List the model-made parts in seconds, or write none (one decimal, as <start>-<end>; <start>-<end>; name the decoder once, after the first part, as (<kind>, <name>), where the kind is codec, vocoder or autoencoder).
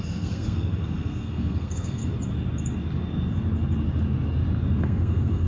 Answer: 0.0-2.0 (codec, SNAC); 4.8-5.5